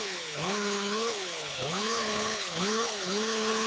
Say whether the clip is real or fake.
fake